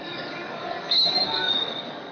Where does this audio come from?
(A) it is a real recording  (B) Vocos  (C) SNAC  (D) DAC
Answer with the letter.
D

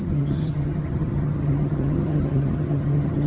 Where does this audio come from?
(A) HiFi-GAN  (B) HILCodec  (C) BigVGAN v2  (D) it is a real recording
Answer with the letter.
A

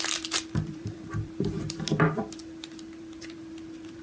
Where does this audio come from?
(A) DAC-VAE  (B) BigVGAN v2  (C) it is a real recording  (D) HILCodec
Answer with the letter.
B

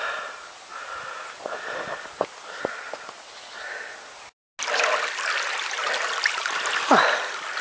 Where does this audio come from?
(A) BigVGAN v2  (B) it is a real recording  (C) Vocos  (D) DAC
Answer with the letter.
B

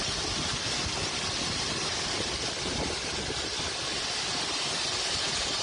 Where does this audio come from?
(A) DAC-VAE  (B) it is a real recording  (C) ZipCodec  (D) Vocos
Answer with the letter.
B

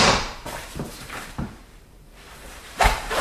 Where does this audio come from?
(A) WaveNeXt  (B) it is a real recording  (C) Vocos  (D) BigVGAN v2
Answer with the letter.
D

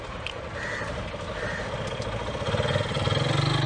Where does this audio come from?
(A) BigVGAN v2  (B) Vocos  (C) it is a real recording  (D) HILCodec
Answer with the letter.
C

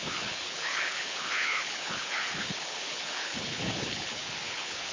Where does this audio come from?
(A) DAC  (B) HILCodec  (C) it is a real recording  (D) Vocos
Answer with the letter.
B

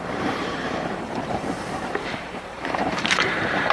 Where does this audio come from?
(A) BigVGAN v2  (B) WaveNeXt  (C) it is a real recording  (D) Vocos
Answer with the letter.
A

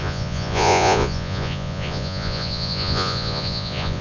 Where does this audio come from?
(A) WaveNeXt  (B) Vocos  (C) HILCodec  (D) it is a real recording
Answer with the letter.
B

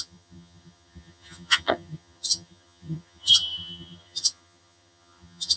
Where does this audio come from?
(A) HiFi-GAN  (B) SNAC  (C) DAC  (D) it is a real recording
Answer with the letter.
A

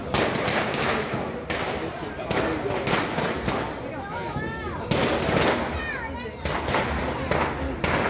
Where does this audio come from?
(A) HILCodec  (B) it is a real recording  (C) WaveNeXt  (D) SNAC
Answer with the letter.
B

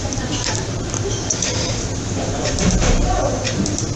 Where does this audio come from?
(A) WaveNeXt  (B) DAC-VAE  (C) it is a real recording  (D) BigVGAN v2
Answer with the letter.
D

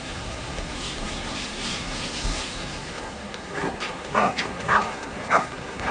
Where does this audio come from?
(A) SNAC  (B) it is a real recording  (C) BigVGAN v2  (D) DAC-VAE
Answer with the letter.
A